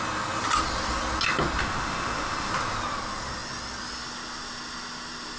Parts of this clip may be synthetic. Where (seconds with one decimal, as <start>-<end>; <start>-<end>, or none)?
1.6-2.5

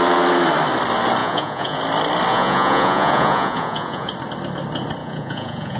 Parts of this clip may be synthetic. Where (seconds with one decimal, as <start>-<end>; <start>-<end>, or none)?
1.2-1.8; 2.3-4.1; 5.0-5.8

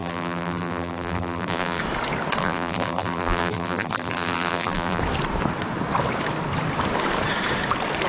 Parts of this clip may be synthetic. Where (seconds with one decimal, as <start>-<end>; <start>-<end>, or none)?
0.0-1.8; 2.4-5.0